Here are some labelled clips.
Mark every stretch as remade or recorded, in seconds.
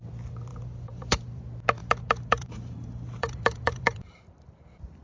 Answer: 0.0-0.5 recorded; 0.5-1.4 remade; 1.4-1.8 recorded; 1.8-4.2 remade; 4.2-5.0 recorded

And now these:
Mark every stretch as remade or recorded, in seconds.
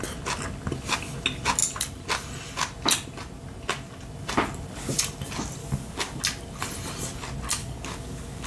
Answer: 0.0-5.6 recorded; 5.6-6.2 remade; 6.2-7.6 recorded; 7.6-8.5 remade